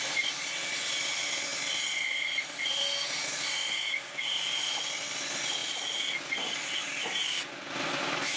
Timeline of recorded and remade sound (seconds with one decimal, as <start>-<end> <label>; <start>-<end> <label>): 0.0-8.4 recorded